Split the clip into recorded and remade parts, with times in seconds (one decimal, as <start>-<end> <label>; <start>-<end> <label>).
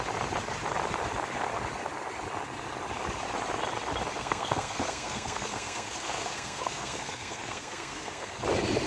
0.0-4.2 recorded; 4.2-8.4 remade; 8.4-8.9 recorded